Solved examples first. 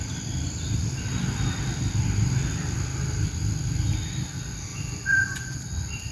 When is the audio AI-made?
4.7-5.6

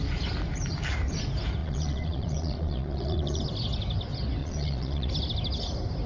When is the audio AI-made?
1.6-3.4; 4.4-5.1

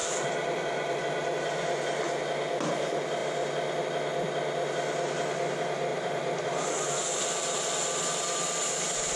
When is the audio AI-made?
0.0-1.0; 5.9-7.1